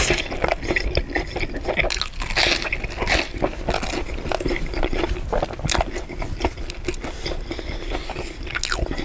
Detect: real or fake real